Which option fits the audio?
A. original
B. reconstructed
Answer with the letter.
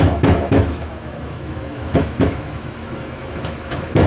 B